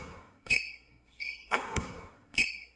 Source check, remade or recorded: remade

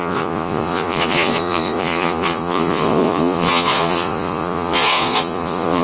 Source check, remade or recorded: remade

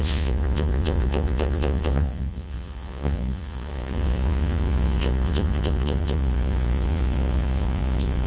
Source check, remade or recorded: remade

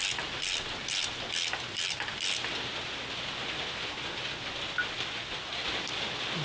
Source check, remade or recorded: recorded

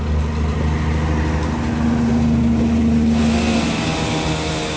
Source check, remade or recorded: recorded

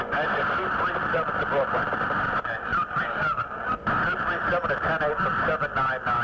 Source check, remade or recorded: recorded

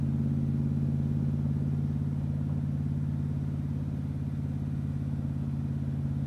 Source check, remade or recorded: recorded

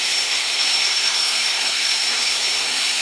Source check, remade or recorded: remade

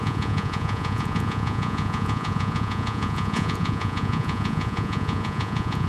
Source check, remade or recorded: remade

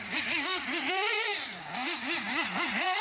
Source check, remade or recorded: remade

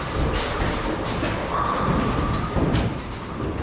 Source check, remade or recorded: recorded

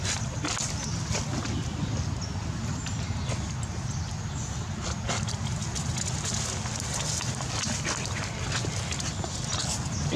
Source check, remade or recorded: recorded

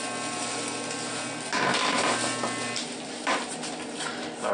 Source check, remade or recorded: recorded